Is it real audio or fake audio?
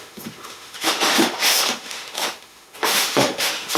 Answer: fake